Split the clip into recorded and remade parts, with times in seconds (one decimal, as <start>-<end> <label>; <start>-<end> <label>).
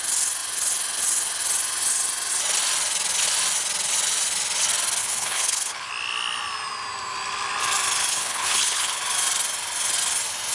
0.0-5.0 recorded; 5.0-5.9 remade; 5.9-8.1 recorded; 8.1-9.0 remade; 9.0-10.5 recorded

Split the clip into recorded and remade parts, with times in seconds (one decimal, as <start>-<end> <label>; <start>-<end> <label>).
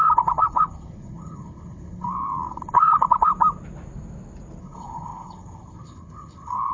0.0-3.3 remade; 3.3-4.6 recorded; 4.6-6.7 remade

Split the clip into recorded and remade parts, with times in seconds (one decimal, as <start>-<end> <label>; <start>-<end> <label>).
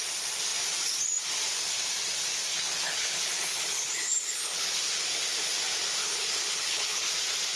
0.0-2.5 recorded; 2.5-4.9 remade; 4.9-6.0 recorded; 6.0-7.1 remade; 7.1-7.6 recorded